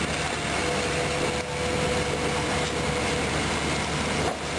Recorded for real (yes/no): yes